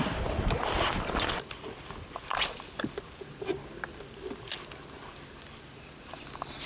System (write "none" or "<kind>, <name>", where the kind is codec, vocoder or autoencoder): none